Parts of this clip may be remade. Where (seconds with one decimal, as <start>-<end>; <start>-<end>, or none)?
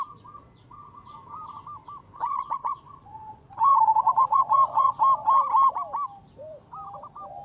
2.0-4.9